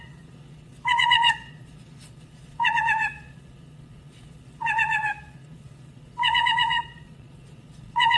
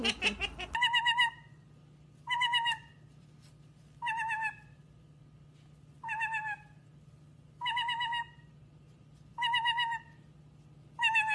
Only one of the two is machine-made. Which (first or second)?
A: first